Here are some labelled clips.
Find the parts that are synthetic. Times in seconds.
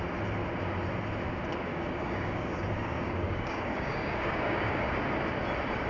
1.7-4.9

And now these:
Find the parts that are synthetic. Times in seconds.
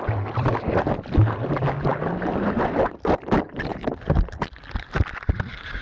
none